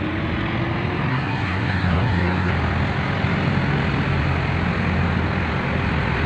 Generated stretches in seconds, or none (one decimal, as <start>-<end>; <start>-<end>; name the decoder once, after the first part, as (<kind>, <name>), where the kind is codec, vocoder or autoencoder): 1.1-2.5 (codec, SNAC)